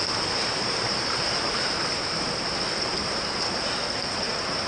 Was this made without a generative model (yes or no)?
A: no